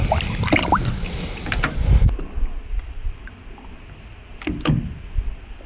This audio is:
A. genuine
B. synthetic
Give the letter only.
A